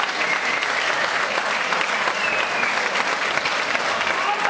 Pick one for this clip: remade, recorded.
recorded